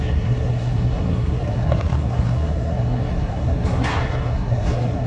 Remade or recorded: remade